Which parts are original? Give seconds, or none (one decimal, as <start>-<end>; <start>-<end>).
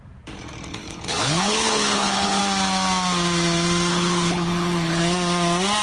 0.0-0.7; 2.4-3.9; 5.0-5.8